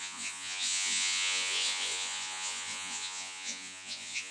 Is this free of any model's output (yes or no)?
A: no